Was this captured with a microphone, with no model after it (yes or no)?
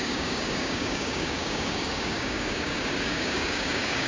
no